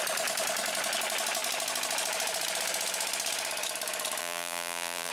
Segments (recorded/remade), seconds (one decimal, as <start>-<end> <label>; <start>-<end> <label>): 0.0-4.2 recorded; 4.2-5.1 remade